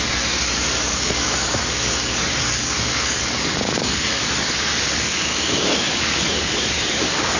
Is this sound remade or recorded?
remade